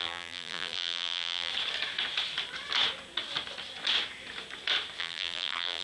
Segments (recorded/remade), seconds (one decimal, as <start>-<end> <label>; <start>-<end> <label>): 0.0-1.5 remade; 1.5-5.0 recorded; 5.0-5.8 remade